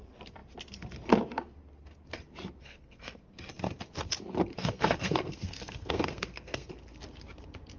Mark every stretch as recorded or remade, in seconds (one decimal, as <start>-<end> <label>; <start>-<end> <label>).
0.0-2.6 recorded; 2.6-3.3 remade; 3.3-4.5 recorded; 4.5-6.7 remade; 6.7-7.8 recorded